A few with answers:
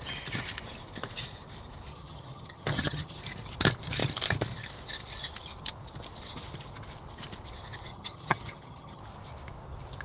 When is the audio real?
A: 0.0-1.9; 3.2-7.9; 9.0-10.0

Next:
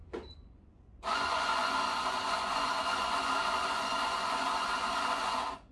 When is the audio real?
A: none

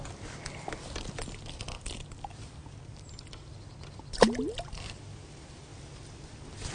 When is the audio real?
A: 0.0-6.7

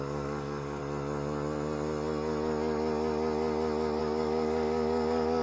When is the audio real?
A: 0.8-4.0

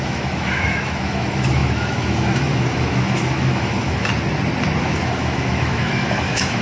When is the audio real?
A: 4.1-4.8

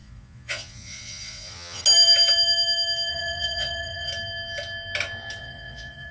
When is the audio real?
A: 1.8-3.1; 4.1-5.4